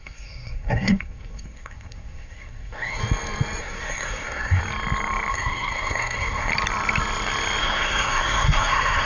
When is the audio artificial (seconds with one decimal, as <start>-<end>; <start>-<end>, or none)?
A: 0.0-3.0; 3.6-4.6; 5.3-6.5; 7.6-9.1